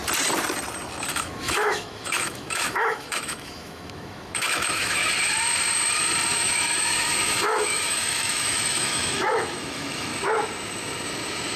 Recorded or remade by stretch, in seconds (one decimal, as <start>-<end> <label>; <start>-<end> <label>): 0.0-1.1 recorded; 1.1-5.0 remade; 5.0-6.3 recorded; 6.3-10.1 remade; 10.1-11.6 recorded

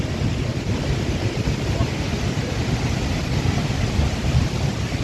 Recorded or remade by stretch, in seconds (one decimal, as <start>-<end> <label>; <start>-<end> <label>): 0.0-5.0 recorded